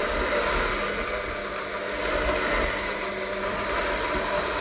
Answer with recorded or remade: recorded